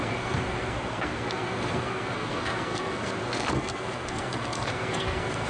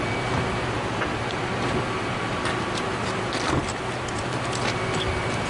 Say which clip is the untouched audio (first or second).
second